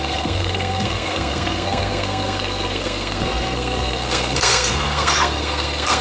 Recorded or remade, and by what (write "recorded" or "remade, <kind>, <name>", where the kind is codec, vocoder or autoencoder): remade, codec, SNAC